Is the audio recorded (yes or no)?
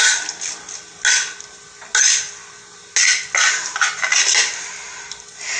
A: yes